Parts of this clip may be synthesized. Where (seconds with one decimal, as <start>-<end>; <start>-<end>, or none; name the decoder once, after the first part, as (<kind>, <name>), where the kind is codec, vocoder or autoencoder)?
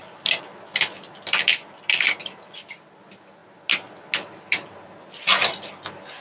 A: none